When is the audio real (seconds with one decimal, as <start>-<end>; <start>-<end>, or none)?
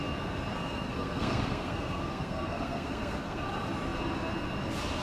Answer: 0.0-0.5; 3.5-5.0